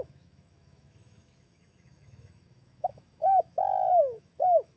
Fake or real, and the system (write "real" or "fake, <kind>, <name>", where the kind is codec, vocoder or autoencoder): fake, autoencoder, DAC-VAE